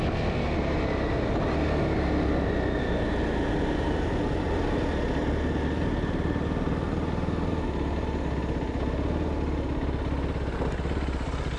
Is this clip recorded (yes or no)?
yes